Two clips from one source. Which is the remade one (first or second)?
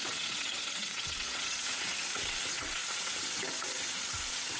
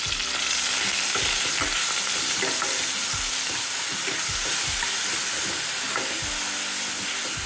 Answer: first